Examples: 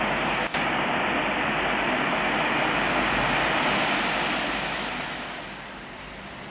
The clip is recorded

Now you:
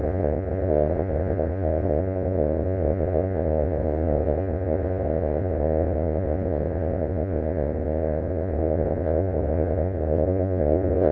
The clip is remade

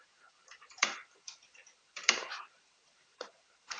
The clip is remade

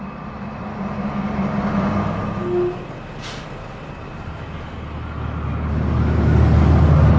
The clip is recorded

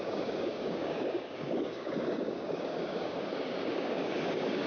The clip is remade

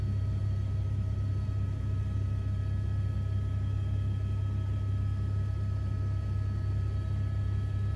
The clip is recorded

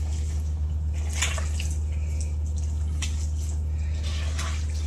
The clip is recorded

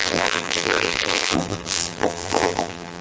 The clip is remade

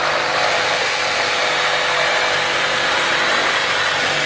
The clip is recorded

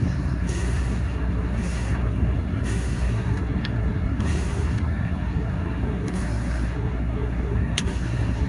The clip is remade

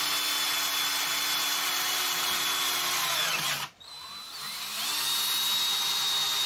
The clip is recorded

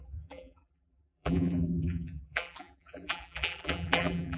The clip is remade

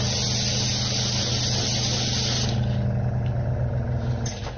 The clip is recorded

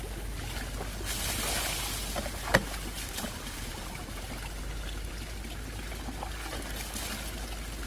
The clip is recorded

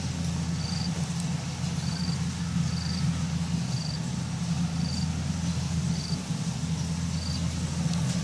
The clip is recorded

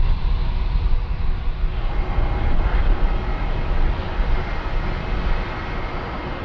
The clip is recorded